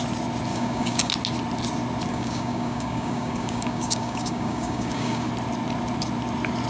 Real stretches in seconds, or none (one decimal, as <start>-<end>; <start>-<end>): 0.0-0.5; 1.1-2.1; 5.3-6.7